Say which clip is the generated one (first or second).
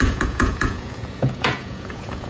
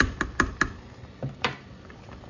first